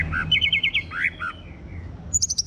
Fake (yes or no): no